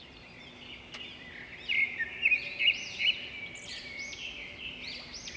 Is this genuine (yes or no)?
yes